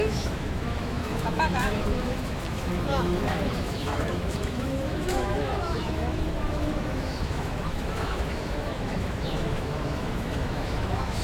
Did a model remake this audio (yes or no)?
yes